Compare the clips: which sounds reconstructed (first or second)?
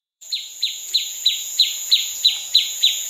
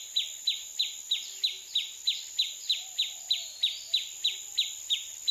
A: first